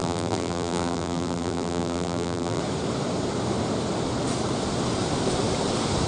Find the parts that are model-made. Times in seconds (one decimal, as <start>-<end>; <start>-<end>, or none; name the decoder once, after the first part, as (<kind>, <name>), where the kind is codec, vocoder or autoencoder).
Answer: 0.0-2.6 (vocoder, BigVGAN v2)